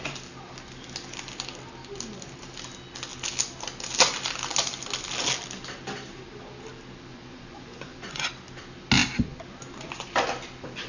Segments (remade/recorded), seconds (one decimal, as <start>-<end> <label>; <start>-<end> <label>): 0.0-7.1 recorded; 7.1-8.3 remade; 8.3-10.9 recorded